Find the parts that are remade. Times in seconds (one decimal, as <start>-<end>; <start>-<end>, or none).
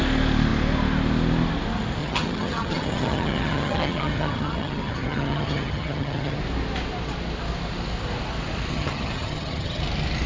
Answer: 2.0-6.4; 8.7-9.8